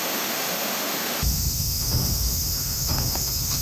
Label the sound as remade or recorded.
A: remade